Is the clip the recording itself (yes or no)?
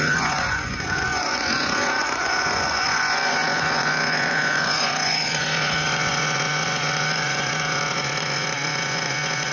no